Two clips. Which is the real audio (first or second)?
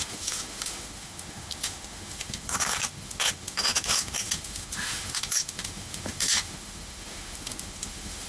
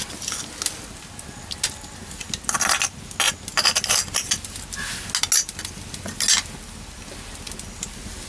second